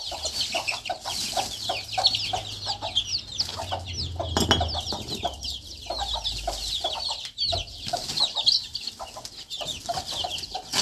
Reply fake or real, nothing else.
real